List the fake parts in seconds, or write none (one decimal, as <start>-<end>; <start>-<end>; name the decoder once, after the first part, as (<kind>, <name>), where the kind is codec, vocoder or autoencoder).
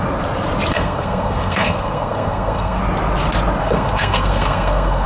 0.7-2.8 (codec, SNAC); 3.6-5.1